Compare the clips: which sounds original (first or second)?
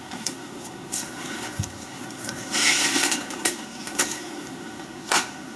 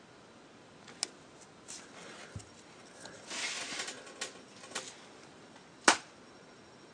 second